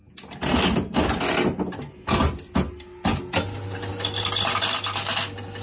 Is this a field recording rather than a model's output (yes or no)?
yes